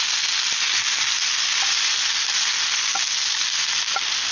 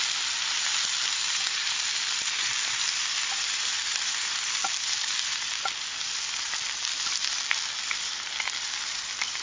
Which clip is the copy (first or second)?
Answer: second